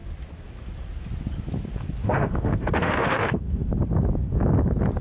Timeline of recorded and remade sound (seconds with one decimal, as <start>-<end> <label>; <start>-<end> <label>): 0.0-2.0 recorded; 2.0-3.7 remade; 3.7-5.0 recorded